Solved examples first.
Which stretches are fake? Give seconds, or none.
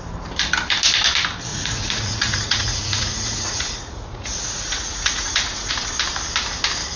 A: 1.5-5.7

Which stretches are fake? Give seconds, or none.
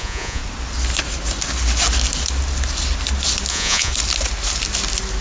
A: 0.0-0.4; 3.5-3.9